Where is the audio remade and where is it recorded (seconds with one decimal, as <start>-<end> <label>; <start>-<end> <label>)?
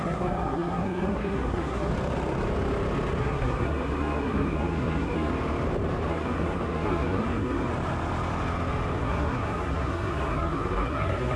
0.0-1.9 remade; 1.9-3.2 recorded; 3.2-5.3 remade; 5.3-6.1 recorded; 6.1-7.7 remade; 7.7-9.0 recorded; 9.0-11.4 remade